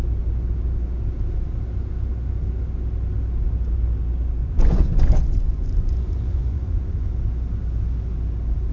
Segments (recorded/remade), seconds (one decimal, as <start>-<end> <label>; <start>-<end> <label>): 0.0-4.4 recorded; 4.4-7.1 remade; 7.1-8.7 recorded